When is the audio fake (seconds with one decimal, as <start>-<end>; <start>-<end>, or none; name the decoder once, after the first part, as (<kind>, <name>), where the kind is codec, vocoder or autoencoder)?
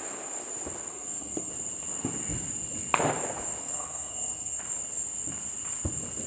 0.9-1.5 (codec, SNAC); 3.6-4.6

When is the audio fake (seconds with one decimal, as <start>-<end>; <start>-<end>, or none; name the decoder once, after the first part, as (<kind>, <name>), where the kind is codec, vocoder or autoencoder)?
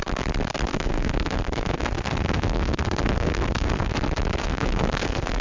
0.7-3.9 (codec, SNAC); 4.4-5.4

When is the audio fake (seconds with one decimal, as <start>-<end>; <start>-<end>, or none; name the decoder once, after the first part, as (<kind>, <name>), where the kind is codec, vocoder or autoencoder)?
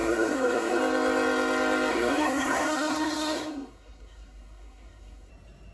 0.0-0.8 (codec, SNAC); 1.9-5.3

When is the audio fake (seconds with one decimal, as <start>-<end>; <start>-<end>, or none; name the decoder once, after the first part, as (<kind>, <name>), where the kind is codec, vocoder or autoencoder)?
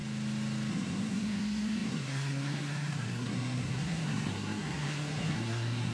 0.7-5.9 (codec, SNAC)